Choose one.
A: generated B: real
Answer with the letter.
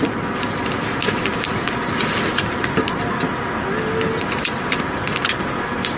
B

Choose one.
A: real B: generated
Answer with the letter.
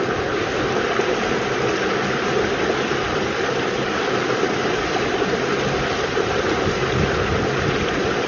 A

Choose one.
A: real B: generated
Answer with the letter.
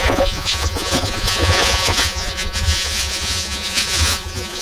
B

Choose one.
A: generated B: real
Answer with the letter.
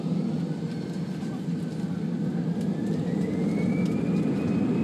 B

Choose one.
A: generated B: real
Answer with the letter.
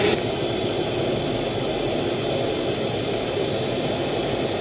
B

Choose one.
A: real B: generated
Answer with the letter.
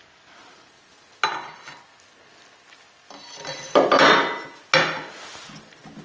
A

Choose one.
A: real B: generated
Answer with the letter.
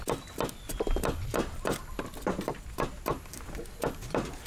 A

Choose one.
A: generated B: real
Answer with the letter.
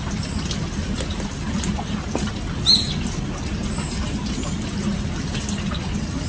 B